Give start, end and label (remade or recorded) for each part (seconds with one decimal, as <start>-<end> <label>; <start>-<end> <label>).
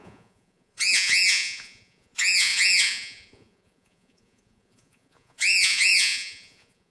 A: 0.0-6.9 remade